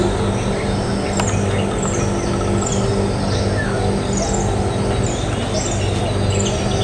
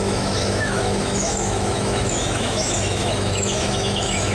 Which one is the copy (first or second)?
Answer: second